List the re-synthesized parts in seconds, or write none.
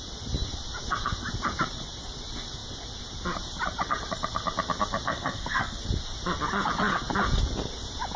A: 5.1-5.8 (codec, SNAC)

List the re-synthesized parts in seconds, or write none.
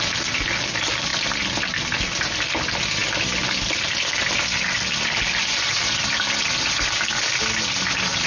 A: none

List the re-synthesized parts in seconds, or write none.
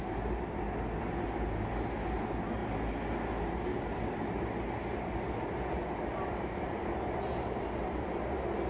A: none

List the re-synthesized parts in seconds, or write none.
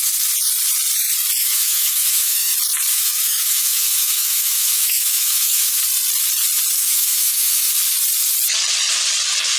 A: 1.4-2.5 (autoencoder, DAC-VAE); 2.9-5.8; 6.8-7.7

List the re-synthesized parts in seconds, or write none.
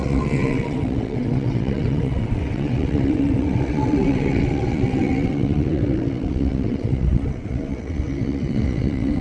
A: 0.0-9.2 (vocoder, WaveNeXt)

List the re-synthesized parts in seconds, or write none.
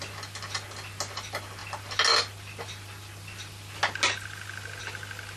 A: none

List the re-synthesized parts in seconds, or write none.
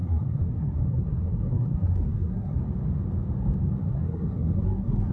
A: 0.0-2.6 (codec, SNAC); 3.8-5.1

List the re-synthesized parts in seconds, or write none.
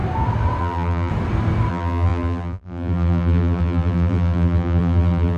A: 0.6-1.1 (vocoder, BigVGAN v2); 1.7-5.4